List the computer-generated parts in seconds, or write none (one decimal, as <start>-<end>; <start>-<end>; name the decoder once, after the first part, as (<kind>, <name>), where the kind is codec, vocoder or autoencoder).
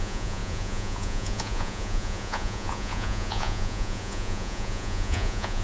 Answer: 0.0-5.6 (vocoder, Vocos)